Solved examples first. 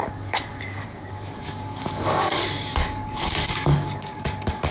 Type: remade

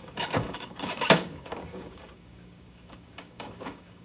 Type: remade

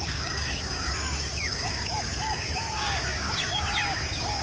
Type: remade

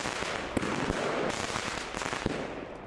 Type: recorded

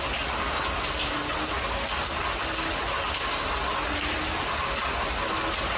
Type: recorded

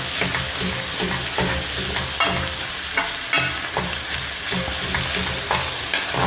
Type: recorded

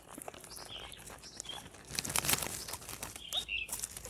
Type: recorded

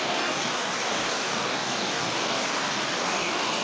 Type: remade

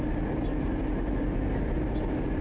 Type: recorded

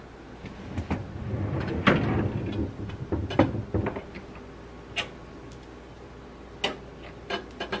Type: recorded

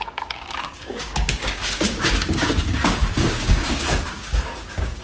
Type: remade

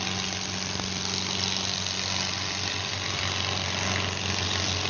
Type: recorded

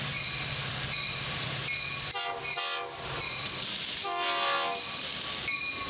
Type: recorded